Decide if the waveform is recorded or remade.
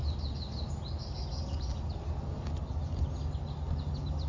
recorded